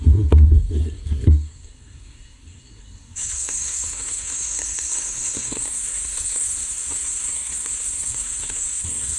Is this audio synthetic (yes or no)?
yes